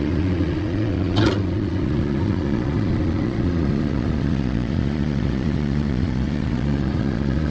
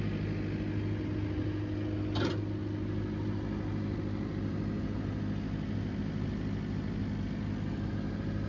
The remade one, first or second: first